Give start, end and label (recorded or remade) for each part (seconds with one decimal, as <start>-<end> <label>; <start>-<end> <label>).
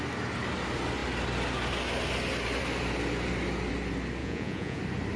0.0-4.2 recorded; 4.2-4.8 remade; 4.8-5.2 recorded